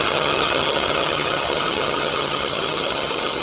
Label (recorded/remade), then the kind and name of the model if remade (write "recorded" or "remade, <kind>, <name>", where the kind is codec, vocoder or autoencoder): remade, vocoder, HiFi-GAN